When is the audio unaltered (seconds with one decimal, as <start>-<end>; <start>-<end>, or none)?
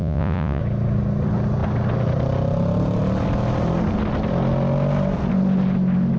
0.6-6.2